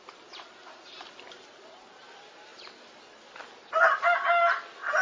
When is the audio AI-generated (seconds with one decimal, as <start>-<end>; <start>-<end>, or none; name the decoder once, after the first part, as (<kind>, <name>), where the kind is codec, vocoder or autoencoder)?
none